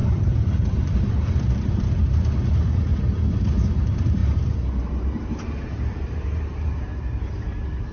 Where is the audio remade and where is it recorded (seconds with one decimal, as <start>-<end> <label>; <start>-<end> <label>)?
0.0-2.9 remade; 2.9-3.8 recorded; 3.8-7.9 remade